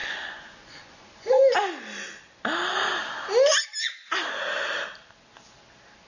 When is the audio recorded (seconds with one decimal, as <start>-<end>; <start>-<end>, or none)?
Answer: 1.4-6.1